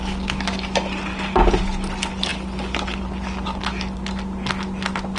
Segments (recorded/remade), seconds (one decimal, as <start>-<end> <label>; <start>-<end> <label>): 0.0-5.2 recorded